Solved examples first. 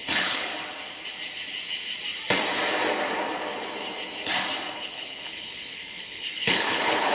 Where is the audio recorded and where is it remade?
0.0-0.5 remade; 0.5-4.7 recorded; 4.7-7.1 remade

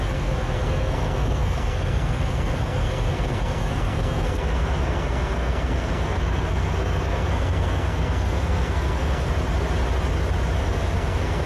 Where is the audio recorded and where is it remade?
0.0-9.3 remade; 9.3-10.6 recorded; 10.6-11.5 remade

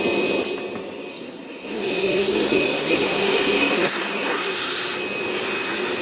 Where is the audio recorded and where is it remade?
0.0-1.1 recorded; 1.1-4.7 remade; 4.7-6.0 recorded

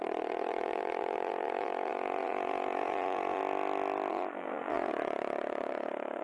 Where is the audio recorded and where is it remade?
0.0-3.4 remade; 3.4-4.1 recorded; 4.1-6.2 remade

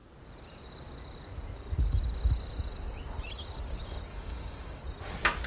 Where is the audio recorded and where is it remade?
0.0-4.1 recorded; 4.1-4.8 remade; 4.8-5.5 recorded

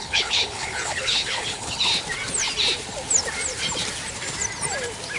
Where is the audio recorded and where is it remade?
0.0-1.9 remade; 1.9-5.2 recorded